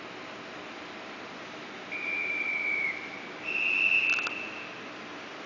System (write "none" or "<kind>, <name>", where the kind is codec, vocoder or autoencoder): none